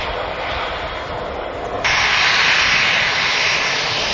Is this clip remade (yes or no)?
no